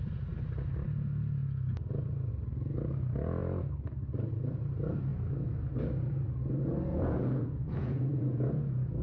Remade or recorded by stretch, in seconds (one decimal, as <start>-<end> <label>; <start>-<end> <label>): 0.0-6.9 recorded; 6.9-9.0 remade